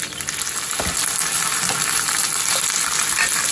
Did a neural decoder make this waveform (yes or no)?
no